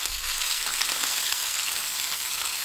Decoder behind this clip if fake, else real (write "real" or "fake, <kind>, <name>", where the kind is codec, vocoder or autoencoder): fake, codec, SNAC